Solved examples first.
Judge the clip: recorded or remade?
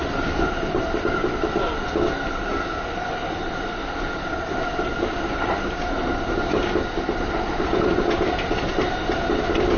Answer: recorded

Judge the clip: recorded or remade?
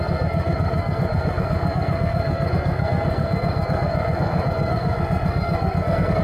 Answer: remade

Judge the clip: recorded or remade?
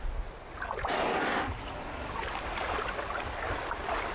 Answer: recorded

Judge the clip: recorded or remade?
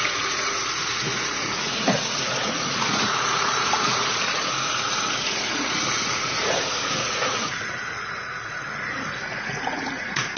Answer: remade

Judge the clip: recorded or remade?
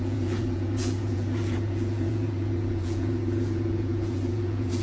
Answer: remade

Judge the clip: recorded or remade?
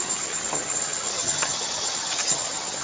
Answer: remade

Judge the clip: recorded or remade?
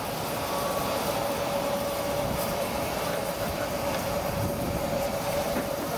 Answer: remade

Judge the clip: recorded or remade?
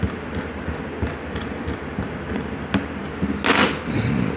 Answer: recorded